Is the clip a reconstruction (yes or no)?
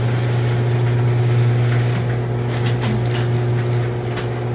no